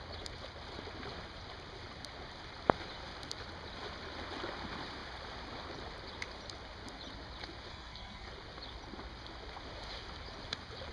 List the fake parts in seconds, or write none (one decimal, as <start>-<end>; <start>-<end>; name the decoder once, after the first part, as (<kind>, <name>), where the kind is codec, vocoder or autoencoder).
7.7-8.3 (codec, SNAC)